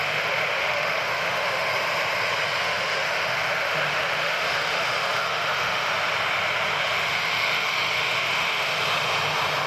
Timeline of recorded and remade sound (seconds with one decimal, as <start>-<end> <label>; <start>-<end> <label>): 0.0-1.7 remade; 1.7-2.6 recorded; 2.6-5.9 remade; 5.9-6.8 recorded; 6.8-8.7 remade; 8.7-9.7 recorded

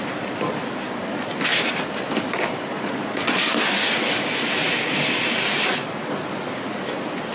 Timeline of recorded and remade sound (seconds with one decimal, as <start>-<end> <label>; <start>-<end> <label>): 0.0-2.7 recorded; 2.7-3.4 remade; 3.4-7.3 recorded

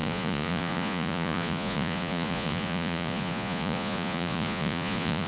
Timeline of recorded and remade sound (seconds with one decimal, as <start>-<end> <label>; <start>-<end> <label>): 0.0-5.3 remade

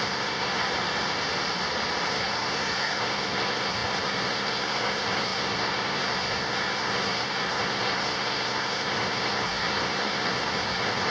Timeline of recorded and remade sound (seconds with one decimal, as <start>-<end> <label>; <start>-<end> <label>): 0.0-0.7 remade; 0.7-2.1 recorded; 2.1-11.1 remade

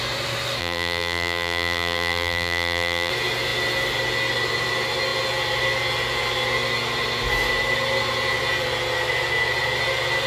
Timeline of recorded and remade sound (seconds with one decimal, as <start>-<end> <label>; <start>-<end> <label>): 0.0-0.6 recorded; 0.6-3.1 remade; 3.1-10.3 recorded

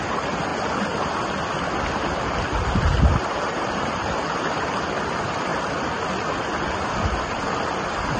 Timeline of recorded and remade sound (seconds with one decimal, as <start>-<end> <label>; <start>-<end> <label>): 0.0-0.5 remade; 0.5-3.4 recorded; 3.4-5.5 remade; 5.5-7.2 recorded; 7.2-8.2 remade

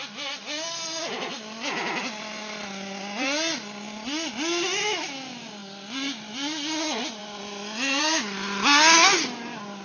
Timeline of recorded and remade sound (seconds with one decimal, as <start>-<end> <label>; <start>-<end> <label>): 0.0-9.8 recorded